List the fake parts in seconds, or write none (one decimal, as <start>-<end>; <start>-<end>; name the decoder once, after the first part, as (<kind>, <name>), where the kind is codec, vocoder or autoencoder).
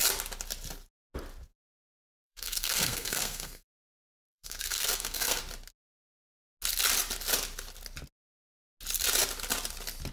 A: 1.5-5.4 (codec, SNAC)